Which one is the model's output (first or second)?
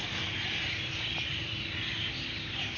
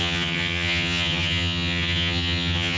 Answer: second